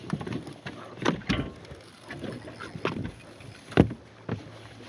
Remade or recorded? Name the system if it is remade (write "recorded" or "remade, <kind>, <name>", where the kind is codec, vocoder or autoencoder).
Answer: recorded